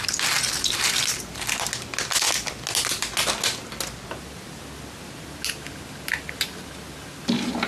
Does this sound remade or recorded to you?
recorded